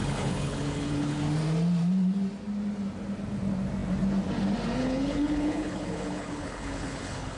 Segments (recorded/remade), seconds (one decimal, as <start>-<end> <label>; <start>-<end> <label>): 0.0-1.2 remade; 1.2-4.8 recorded; 4.8-7.4 remade